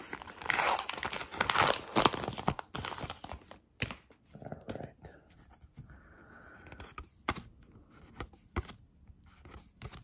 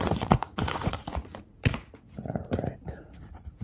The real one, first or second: first